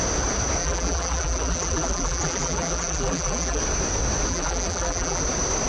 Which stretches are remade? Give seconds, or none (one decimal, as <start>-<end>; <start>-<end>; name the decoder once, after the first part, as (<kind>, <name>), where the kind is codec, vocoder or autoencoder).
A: 0.6-3.6 (vocoder, BigVGAN v2); 4.3-5.2